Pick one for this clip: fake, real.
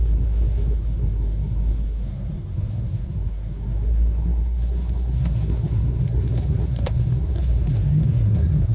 fake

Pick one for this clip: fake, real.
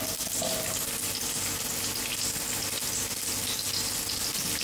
real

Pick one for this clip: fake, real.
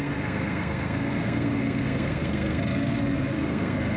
fake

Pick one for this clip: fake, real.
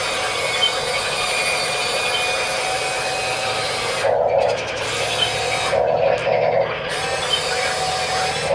real